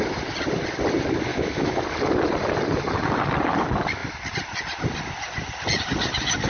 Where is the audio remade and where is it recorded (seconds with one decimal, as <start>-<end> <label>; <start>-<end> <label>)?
0.0-1.3 recorded; 1.3-1.8 remade; 1.8-6.5 recorded